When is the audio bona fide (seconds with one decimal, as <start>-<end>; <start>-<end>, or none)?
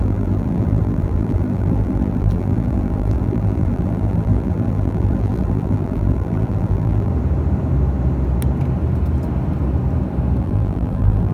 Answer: 7.1-10.4